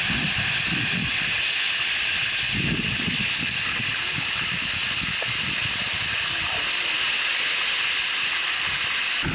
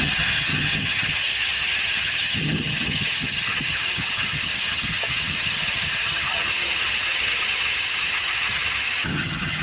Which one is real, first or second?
first